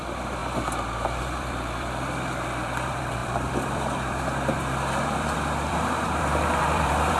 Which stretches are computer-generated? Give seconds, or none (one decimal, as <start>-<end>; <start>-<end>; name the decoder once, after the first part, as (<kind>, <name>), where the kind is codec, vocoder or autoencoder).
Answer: 0.0-0.4 (vocoder, BigVGAN v2); 1.2-7.2